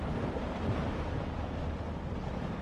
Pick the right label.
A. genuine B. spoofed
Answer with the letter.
A